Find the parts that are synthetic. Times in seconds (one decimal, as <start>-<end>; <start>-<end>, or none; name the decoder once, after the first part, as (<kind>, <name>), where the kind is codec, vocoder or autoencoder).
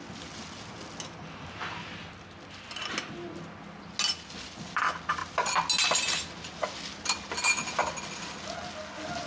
none